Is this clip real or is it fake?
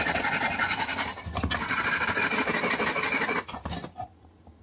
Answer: real